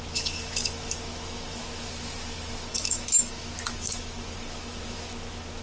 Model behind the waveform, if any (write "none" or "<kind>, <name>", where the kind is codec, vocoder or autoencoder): autoencoder, DAC-VAE